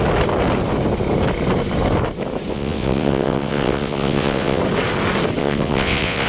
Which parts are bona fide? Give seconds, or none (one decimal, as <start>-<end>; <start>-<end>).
0.0-2.5; 4.6-5.4